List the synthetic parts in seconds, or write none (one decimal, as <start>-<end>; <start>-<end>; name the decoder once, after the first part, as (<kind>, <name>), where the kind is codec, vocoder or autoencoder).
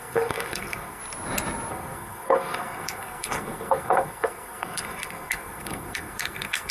0.0-1.0 (codec, SNAC); 1.7-6.7